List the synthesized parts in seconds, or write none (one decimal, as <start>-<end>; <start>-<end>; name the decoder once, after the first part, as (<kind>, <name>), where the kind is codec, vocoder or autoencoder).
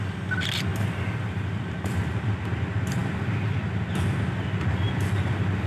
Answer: 0.7-2.1 (vocoder, BigVGAN v2)